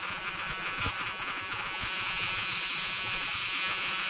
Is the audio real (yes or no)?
no